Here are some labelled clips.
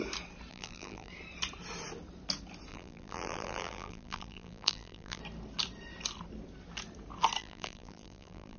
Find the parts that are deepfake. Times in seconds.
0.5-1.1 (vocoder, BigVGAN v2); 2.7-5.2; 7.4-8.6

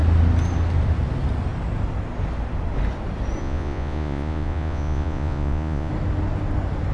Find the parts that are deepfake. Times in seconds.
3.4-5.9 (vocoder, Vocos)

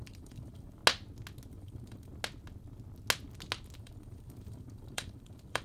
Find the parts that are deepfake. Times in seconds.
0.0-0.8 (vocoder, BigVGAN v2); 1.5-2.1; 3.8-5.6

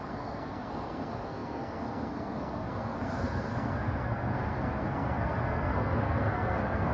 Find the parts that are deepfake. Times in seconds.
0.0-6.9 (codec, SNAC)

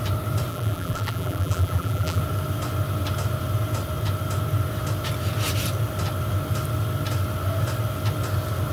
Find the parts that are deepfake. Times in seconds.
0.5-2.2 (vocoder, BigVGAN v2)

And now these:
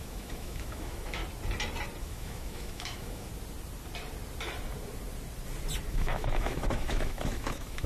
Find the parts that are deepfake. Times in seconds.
0.0-1.2 (autoencoder, DAC-VAE); 2.0-3.3; 5.9-7.9

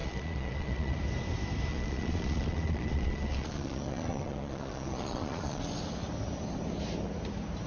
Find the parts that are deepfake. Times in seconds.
0.0-1.0 (vocoder, Vocos); 1.7-5.6

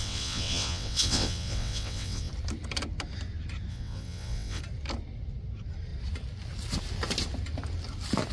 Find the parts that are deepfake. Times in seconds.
0.0-2.3 (vocoder, WaveNeXt); 3.7-4.6